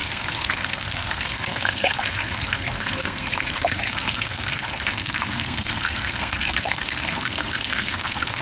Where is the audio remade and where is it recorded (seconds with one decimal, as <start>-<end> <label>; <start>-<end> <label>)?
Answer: 0.0-8.4 remade